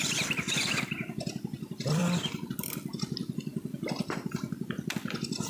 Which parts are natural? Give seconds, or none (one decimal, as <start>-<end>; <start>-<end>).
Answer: 0.0-5.5